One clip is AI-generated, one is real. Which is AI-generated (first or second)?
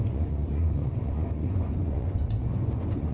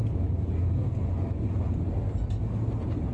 first